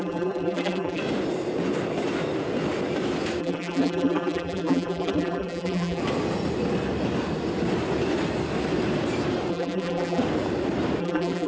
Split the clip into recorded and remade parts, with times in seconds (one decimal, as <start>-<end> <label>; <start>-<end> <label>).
0.0-1.0 remade; 1.0-3.4 recorded; 3.4-6.0 remade; 6.0-9.5 recorded; 9.5-10.2 remade; 10.2-11.0 recorded; 11.0-11.5 remade